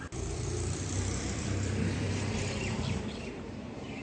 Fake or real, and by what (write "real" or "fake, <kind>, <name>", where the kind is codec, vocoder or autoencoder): fake, vocoder, BigVGAN v2